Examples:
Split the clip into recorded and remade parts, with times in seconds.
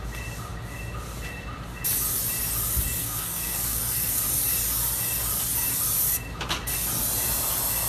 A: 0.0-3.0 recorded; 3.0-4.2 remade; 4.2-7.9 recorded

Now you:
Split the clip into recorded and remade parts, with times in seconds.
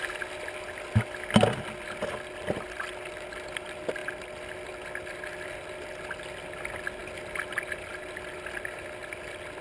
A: 0.0-9.6 recorded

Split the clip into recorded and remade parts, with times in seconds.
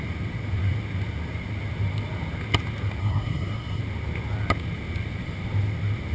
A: 0.0-3.0 recorded; 3.0-3.8 remade; 3.8-6.1 recorded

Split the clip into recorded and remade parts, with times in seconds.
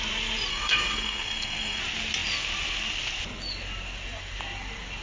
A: 0.0-0.5 recorded; 0.5-1.8 remade; 1.8-5.0 recorded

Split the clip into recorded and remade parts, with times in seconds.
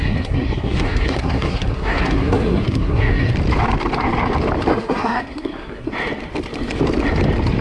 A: 0.0-3.3 remade; 3.3-4.7 recorded; 4.7-5.9 remade; 5.9-7.6 recorded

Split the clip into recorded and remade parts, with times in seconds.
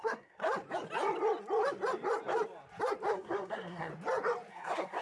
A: 0.0-0.4 remade; 0.4-3.1 recorded; 3.1-3.9 remade; 3.9-4.5 recorded; 4.5-5.0 remade